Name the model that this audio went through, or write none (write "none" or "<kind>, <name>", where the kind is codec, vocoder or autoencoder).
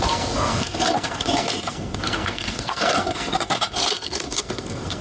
codec, SNAC